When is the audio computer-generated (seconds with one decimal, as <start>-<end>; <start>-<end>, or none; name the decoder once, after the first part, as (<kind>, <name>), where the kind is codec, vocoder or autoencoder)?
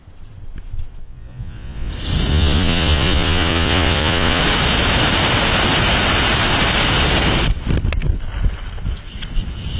1.0-1.9 (vocoder, Vocos); 2.3-4.4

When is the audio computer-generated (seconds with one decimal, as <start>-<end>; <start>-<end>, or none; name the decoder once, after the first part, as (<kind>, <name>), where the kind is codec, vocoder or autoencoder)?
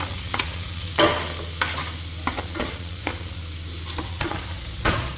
0.0-0.9 (vocoder, Vocos); 2.3-3.4; 4.0-5.2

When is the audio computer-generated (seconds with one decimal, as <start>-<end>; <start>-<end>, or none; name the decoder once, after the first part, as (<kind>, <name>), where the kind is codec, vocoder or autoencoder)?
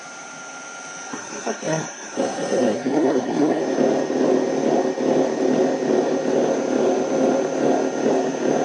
1.1-3.6 (codec, SNAC)